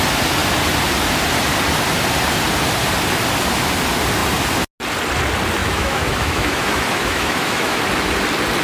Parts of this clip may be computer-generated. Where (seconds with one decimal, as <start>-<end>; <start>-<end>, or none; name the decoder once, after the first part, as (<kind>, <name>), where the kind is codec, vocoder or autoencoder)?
5.6-7.8 (autoencoder, DAC-VAE)